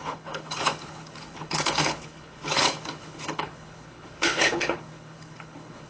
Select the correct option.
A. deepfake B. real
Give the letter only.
A